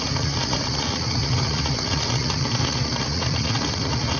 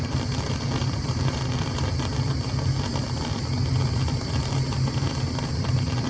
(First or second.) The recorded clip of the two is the second